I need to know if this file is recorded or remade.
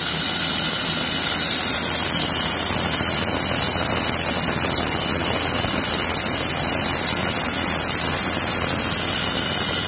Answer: recorded